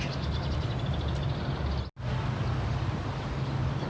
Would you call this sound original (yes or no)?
yes